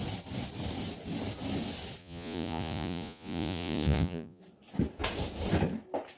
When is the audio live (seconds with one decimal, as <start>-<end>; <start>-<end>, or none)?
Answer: 0.0-2.0; 4.4-6.2